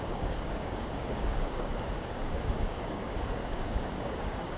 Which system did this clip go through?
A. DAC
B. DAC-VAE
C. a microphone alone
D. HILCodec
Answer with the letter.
A